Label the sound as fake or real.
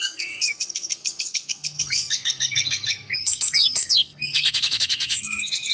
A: fake